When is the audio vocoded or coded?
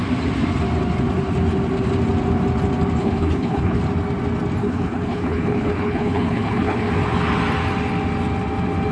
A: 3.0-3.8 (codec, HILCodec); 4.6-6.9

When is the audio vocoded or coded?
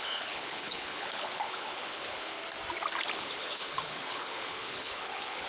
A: 0.0-2.4 (codec, HILCodec); 3.1-5.5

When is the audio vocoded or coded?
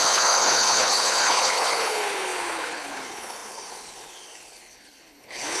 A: 0.0-5.6 (codec, HILCodec)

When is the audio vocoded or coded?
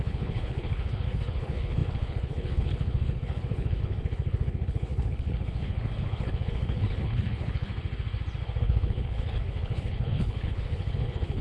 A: 0.0-7.7 (codec, HILCodec); 8.6-11.4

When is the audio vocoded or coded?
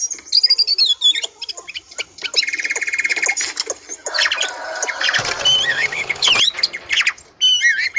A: 5.7-6.3 (codec, HILCodec)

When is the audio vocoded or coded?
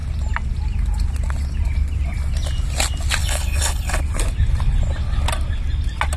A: 3.2-4.0 (codec, HILCodec)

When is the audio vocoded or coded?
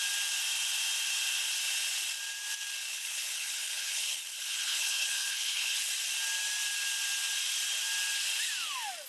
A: 2.9-5.9 (codec, HILCodec)